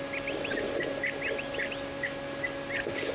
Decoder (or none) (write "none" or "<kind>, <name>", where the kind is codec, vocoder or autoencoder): none